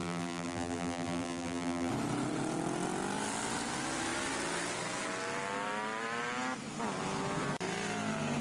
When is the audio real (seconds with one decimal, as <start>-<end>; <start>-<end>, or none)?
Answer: 1.9-8.4